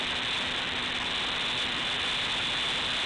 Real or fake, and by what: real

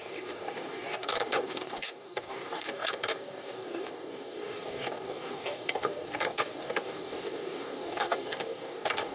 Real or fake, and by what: fake, codec, DAC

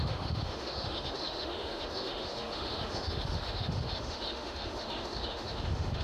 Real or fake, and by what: fake, autoencoder, DAC-VAE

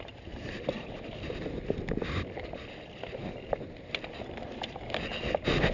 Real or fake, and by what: real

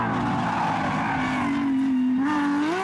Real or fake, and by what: real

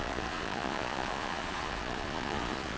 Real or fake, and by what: fake, vocoder, Vocos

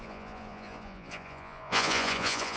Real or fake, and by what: fake, vocoder, Vocos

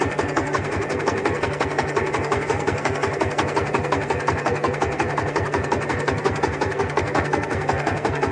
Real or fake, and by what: fake, codec, SNAC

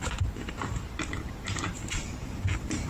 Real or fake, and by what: fake, vocoder, BigVGAN v2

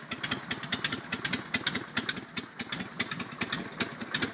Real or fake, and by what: real